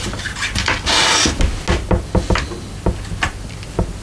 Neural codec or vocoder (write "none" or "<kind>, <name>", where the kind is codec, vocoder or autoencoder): none